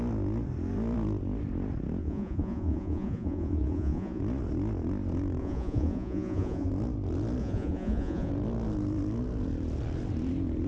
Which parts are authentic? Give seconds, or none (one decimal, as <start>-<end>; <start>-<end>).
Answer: 0.0-2.0; 4.2-5.4; 6.7-7.4; 8.3-10.7